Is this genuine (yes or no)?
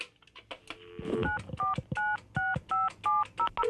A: yes